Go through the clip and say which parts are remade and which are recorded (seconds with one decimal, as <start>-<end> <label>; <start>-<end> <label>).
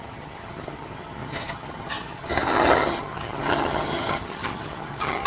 0.0-5.3 remade